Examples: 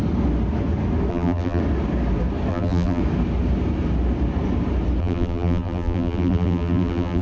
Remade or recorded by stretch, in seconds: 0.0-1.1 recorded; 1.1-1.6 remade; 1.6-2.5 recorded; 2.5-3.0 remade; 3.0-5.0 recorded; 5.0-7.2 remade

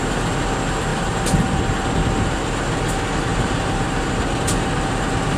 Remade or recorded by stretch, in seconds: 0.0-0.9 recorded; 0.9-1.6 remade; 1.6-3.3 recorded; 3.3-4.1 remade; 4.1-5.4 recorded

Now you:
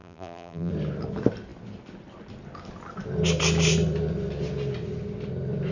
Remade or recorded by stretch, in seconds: 0.0-0.7 remade; 0.7-5.7 recorded

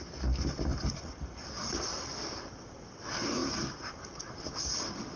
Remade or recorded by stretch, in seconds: 0.0-0.7 recorded; 0.7-3.0 remade; 3.0-3.4 recorded; 3.4-4.2 remade; 4.2-5.2 recorded